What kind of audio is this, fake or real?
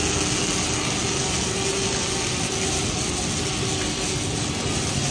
real